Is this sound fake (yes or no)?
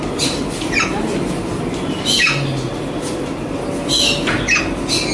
no